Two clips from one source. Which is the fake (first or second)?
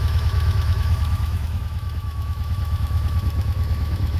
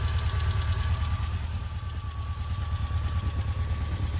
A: first